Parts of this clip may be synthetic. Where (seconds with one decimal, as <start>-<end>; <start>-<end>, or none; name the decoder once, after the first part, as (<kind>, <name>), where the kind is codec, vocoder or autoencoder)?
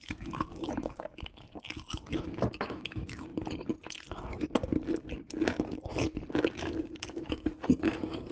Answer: 0.0-3.3 (autoencoder, DAC-VAE); 6.5-8.3